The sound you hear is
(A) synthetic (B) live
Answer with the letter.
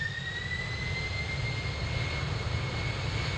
B